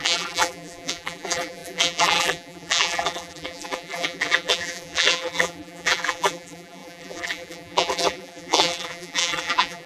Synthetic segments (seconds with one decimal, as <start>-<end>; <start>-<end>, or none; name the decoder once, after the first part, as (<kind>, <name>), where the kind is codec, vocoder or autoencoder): 0.0-9.9 (vocoder, BigVGAN v2)